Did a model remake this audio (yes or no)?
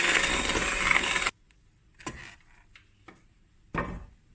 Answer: no